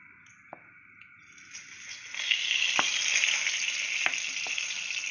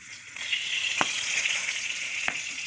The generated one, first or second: second